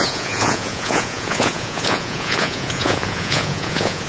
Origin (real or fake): fake